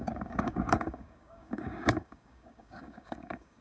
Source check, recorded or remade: remade